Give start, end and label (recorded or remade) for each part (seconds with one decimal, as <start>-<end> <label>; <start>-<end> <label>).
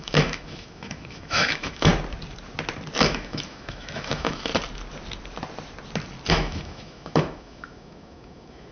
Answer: 0.0-1.9 remade; 1.9-3.0 recorded; 3.0-4.5 remade; 4.5-6.3 recorded; 6.3-8.7 remade